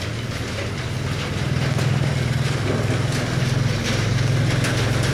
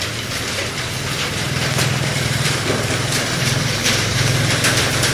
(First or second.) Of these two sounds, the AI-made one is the second